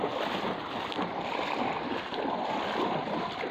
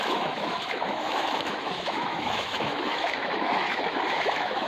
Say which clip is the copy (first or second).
second